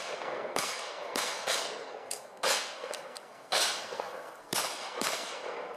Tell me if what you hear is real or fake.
fake